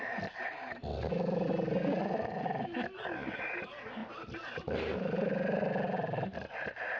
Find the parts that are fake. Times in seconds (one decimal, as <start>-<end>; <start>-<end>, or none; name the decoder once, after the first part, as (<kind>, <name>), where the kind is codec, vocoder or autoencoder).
none